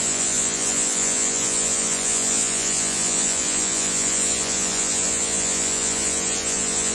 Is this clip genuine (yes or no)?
no